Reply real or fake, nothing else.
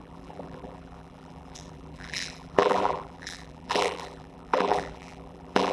fake